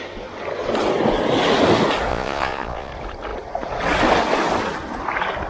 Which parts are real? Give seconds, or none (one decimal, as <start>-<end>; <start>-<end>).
0.0-2.1; 2.9-5.5